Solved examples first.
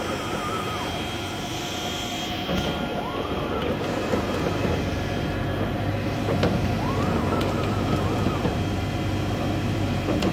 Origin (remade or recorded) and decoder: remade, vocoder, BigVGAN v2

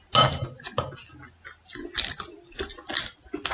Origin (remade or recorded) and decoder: recorded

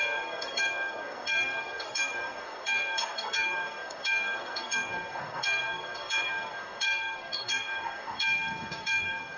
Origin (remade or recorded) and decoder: remade, codec, SNAC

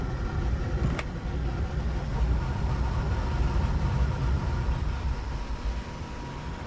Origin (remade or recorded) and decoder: recorded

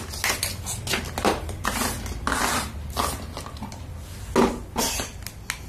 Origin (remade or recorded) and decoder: recorded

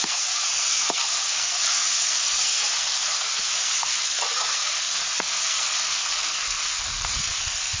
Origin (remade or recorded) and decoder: remade, codec, SNAC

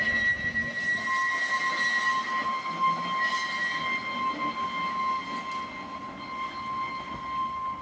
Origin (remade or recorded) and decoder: recorded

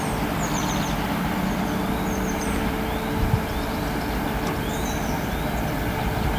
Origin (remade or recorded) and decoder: recorded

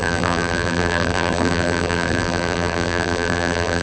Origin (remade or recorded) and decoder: remade, vocoder, BigVGAN v2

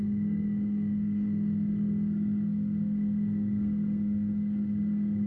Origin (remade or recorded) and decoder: remade, codec, SNAC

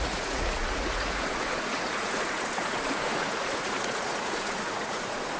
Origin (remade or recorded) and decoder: remade, vocoder, Vocos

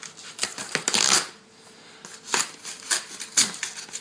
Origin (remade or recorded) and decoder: recorded